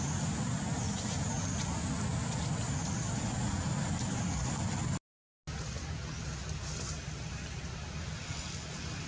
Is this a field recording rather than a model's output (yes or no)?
yes